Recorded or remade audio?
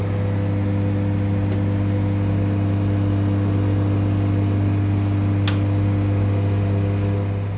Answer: recorded